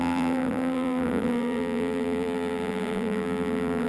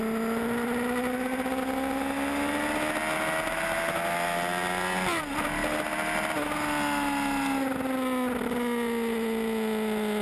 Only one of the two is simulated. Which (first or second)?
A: first